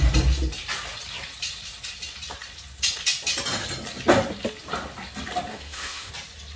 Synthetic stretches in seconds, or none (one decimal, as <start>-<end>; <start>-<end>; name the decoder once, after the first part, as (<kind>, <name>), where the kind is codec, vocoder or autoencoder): 5.5-6.1 (autoencoder, DAC-VAE)